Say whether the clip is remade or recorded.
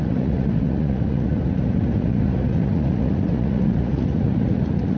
remade